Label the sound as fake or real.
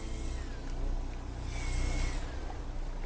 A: real